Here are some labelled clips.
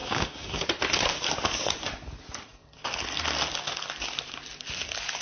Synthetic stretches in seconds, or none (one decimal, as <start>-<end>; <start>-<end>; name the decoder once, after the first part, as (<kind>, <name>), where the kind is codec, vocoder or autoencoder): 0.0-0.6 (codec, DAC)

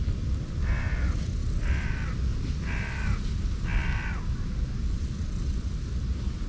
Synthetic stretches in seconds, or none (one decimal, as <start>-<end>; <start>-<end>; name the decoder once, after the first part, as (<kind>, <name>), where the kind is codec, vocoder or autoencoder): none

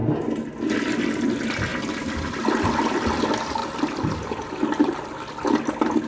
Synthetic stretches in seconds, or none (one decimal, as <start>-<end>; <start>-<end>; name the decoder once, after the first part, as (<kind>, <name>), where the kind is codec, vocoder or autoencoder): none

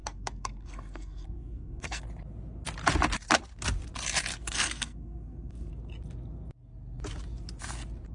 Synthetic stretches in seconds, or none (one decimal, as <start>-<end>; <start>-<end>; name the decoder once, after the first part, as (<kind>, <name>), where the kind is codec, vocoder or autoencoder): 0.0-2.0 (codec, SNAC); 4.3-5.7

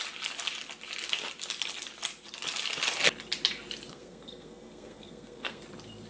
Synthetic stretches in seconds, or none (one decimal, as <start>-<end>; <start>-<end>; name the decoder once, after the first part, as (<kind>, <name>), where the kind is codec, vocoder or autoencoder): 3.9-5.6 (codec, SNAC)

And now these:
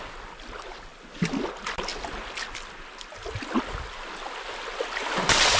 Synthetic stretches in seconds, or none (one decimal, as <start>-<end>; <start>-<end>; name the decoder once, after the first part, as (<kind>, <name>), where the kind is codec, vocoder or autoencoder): none

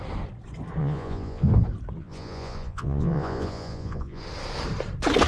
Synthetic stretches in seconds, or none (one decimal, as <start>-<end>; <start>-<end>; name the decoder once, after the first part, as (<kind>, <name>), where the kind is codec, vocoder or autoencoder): 0.8-1.5 (vocoder, Vocos); 2.0-4.2